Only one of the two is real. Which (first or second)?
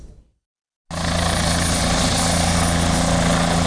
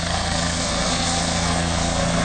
first